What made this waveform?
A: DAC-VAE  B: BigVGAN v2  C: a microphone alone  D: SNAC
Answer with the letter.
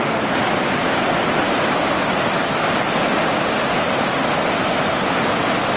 C